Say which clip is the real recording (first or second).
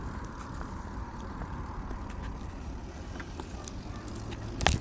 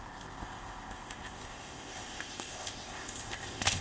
first